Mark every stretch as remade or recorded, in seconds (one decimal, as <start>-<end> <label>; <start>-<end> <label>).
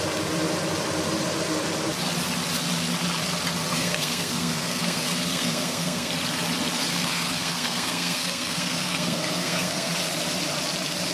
0.0-3.7 recorded; 3.7-6.1 remade; 6.1-6.9 recorded; 6.9-9.9 remade; 9.9-11.1 recorded